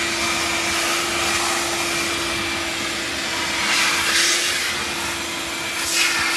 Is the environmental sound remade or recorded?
recorded